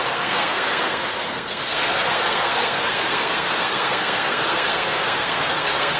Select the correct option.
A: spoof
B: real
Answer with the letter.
A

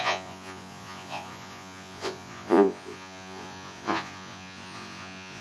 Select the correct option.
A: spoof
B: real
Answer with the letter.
A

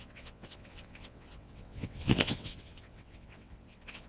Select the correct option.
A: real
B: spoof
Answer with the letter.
B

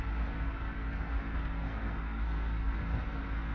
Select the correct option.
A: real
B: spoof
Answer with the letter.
B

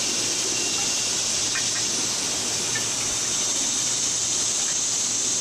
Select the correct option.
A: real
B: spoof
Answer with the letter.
A